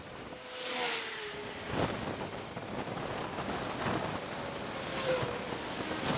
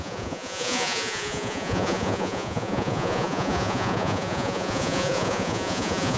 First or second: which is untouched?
first